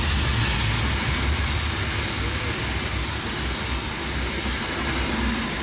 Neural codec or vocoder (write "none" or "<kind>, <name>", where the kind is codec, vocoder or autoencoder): none